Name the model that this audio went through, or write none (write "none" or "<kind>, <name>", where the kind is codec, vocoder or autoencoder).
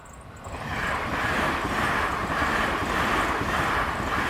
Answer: none